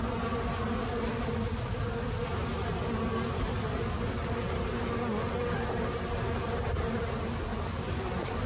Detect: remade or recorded recorded